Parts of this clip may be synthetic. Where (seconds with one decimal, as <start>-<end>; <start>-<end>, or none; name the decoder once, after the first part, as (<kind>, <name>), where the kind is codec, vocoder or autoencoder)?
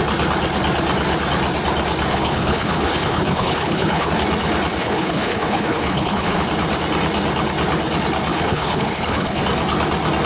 2.1-4.1 (codec, HILCodec); 4.8-6.4; 8.3-9.4